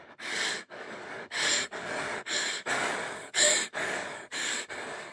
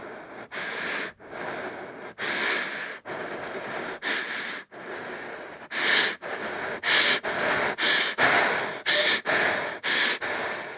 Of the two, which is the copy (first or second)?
first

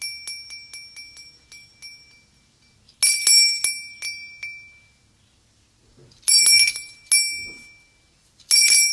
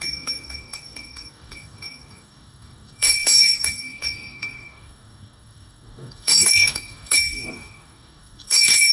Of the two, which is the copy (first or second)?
second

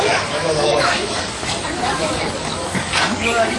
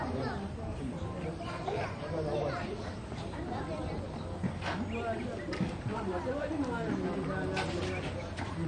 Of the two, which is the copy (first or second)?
first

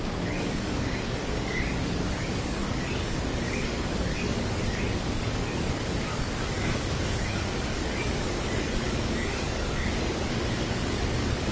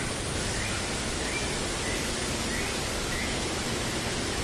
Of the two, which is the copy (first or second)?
first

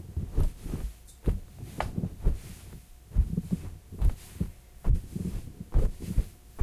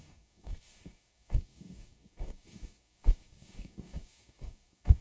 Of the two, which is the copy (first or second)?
second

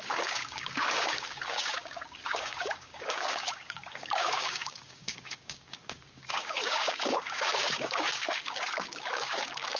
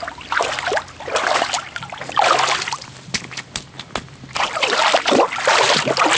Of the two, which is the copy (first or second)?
first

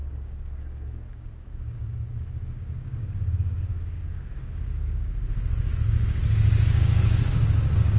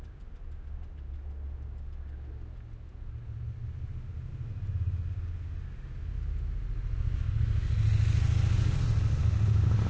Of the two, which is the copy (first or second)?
first